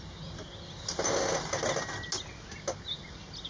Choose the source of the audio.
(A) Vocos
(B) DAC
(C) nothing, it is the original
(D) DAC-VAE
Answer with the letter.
C